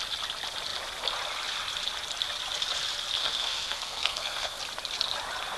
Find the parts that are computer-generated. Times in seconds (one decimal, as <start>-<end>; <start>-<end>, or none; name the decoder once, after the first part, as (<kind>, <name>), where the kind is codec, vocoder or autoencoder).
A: 3.2-4.6 (codec, SNAC)